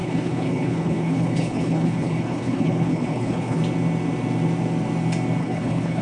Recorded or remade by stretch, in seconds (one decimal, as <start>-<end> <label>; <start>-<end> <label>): 0.0-3.6 remade; 3.6-5.4 recorded; 5.4-6.0 remade